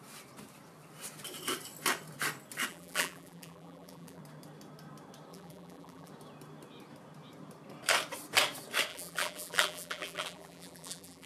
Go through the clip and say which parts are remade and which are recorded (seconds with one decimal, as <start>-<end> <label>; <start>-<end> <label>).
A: 0.0-2.7 recorded; 2.7-4.2 remade; 4.2-5.3 recorded; 5.3-6.1 remade; 6.1-8.9 recorded; 8.9-11.3 remade

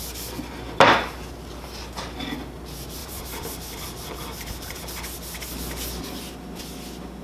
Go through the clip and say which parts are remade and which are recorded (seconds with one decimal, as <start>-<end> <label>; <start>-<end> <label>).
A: 0.0-3.0 recorded; 3.0-4.8 remade; 4.8-7.2 recorded

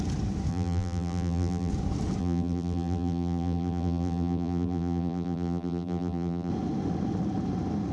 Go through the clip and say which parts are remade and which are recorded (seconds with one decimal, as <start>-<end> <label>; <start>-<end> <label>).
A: 0.0-0.5 recorded; 0.5-1.7 remade; 1.7-2.2 recorded; 2.2-6.5 remade; 6.5-7.9 recorded

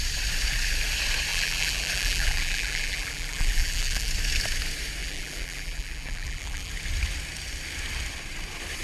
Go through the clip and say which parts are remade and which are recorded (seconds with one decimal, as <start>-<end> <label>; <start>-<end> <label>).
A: 0.0-1.3 recorded; 1.3-4.1 remade; 4.1-5.0 recorded; 5.0-6.7 remade; 6.7-8.8 recorded

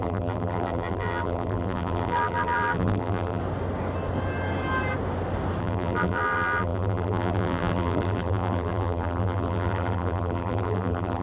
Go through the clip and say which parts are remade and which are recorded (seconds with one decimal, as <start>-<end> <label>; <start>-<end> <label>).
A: 0.0-3.4 remade; 3.4-5.6 recorded; 5.6-11.2 remade

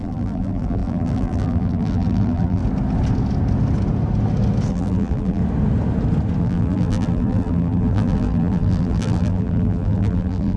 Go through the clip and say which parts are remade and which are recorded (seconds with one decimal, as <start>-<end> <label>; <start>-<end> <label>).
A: 0.0-2.6 remade; 2.6-4.7 recorded; 4.7-5.4 remade; 5.4-6.4 recorded; 6.4-10.6 remade

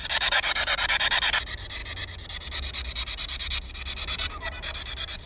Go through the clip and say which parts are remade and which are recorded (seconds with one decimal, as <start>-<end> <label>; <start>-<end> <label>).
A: 0.0-5.3 recorded

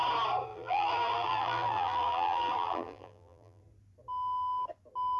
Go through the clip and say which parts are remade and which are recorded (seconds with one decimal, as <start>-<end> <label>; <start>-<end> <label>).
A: 0.0-0.5 recorded; 0.5-3.6 remade; 3.6-5.2 recorded